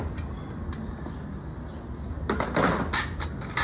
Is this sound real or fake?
real